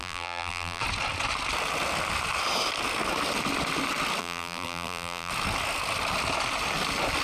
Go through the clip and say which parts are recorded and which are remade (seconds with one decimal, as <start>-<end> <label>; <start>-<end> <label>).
0.0-0.8 remade; 0.8-4.2 recorded; 4.2-5.3 remade; 5.3-7.2 recorded